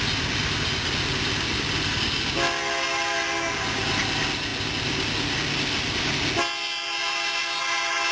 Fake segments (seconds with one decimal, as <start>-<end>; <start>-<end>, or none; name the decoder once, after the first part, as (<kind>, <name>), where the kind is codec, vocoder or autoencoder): none